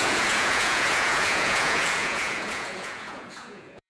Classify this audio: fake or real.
fake